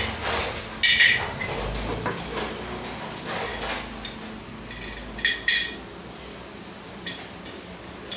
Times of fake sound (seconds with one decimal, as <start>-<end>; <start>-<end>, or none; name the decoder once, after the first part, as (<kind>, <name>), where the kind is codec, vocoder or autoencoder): none